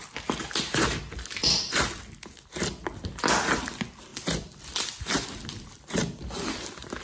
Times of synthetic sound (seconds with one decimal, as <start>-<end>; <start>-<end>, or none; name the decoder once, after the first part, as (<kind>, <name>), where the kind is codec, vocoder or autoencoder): none